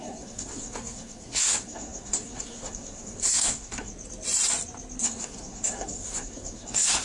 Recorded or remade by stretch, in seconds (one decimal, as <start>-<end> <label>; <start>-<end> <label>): 0.0-3.9 remade; 3.9-5.0 recorded; 5.0-7.0 remade